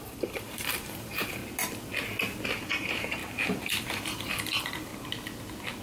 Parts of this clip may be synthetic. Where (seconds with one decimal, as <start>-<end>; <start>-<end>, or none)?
0.0-1.4; 2.6-4.9